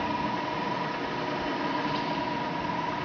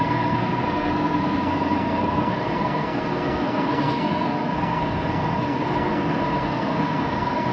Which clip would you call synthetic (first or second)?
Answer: second